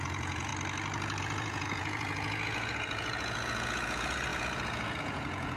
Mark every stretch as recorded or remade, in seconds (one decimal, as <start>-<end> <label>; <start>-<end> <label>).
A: 0.0-0.5 remade; 0.5-1.2 recorded; 1.2-5.6 remade